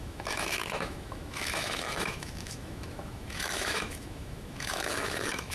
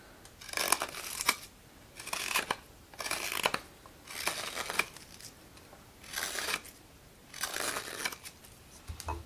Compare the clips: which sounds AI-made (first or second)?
first